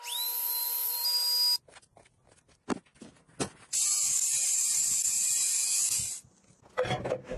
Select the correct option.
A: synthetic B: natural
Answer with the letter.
B